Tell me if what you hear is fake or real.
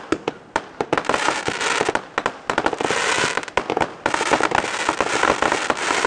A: real